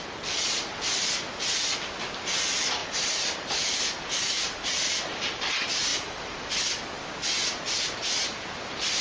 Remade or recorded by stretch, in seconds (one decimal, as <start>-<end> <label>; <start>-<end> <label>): 0.0-2.8 recorded; 2.8-5.4 remade; 5.4-5.9 recorded; 5.9-6.6 remade; 6.6-8.2 recorded; 8.2-9.0 remade